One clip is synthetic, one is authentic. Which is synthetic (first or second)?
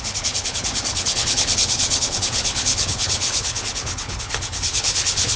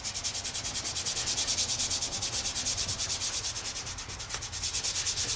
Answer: first